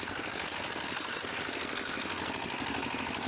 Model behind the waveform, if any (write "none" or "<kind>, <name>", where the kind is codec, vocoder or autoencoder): codec, SNAC